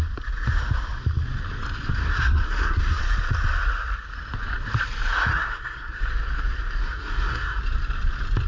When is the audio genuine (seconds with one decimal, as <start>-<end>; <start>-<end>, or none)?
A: 0.0-2.0; 3.0-5.3; 6.0-6.8; 7.6-8.5